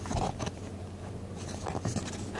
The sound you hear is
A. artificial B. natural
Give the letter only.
B